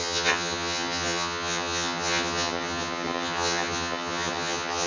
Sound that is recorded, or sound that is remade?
remade